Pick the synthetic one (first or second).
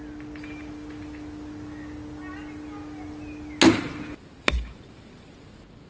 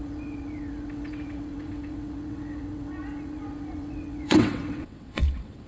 second